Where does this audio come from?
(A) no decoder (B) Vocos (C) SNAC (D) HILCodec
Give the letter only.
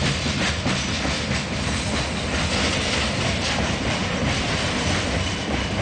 A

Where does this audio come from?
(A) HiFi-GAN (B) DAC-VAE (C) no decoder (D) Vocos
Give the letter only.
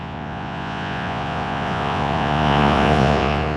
D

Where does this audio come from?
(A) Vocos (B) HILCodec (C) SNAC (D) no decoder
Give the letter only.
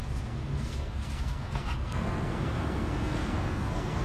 C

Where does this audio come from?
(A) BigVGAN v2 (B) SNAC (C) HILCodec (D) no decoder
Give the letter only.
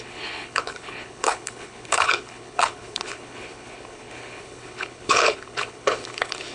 C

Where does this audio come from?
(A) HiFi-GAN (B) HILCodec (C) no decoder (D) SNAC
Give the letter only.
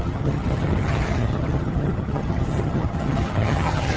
A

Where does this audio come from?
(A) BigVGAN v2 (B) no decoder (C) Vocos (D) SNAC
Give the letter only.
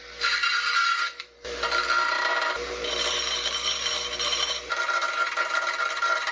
A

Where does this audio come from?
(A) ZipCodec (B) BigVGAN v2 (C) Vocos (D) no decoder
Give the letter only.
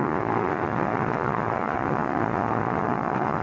C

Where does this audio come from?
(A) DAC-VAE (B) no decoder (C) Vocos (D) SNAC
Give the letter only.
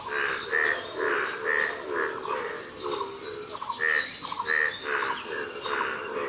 B